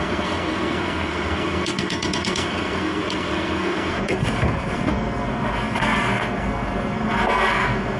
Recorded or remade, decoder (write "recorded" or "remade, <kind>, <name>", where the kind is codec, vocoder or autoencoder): remade, codec, SNAC